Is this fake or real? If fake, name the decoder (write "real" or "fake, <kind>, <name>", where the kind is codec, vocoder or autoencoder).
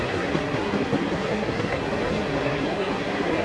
fake, codec, SNAC